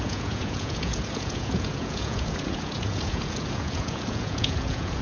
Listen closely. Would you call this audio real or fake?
fake